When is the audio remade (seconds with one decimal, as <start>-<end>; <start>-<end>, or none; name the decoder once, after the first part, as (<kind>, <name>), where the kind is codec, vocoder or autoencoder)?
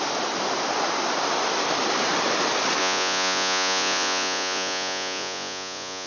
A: 2.8-6.1 (vocoder, Vocos)